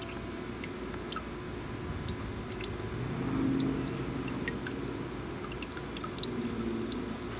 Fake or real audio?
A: real